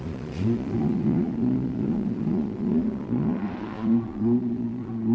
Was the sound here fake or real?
fake